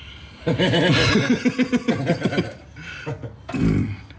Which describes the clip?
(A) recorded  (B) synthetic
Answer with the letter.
A